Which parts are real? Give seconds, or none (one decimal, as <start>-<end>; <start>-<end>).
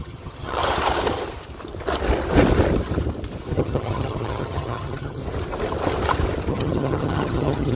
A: 0.6-3.5; 5.2-6.5